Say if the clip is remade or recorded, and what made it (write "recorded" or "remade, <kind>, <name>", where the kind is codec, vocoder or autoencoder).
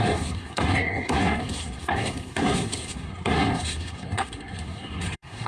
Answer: remade, codec, SNAC